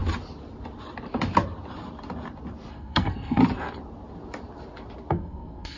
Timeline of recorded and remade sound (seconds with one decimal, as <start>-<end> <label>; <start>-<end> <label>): 0.0-2.7 recorded; 2.7-3.4 remade; 3.4-5.1 recorded; 5.1-5.8 remade